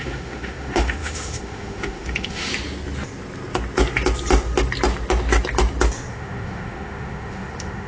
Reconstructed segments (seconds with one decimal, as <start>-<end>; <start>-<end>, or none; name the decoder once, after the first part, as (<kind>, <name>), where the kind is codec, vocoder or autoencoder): 0.0-2.5 (autoencoder, DAC-VAE); 6.1-7.9